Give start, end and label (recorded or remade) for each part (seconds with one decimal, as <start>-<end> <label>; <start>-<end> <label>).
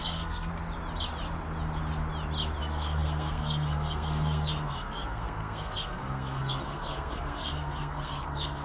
0.0-0.5 remade; 0.5-2.6 recorded; 2.6-8.6 remade